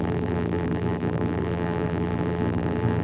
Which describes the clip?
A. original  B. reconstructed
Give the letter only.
B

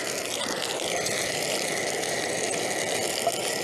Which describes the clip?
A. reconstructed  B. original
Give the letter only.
B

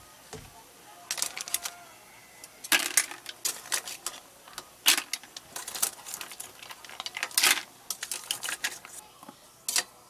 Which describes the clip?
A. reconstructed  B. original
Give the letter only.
B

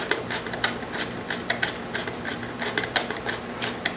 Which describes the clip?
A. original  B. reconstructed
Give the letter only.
A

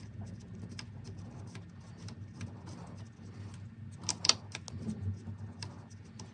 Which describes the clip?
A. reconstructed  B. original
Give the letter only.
B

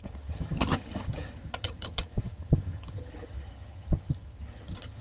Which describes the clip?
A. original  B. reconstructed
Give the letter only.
B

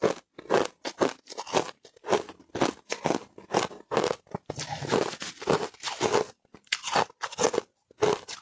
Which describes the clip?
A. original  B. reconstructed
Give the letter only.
A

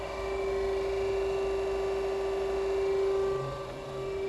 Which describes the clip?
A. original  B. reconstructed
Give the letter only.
A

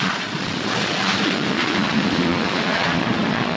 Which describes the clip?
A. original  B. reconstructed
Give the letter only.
B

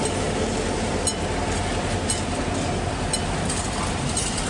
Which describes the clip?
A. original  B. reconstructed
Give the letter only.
A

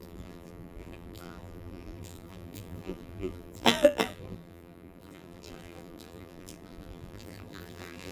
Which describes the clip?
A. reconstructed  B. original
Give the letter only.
A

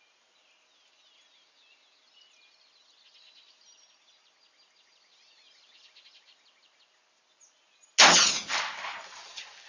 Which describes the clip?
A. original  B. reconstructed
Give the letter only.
A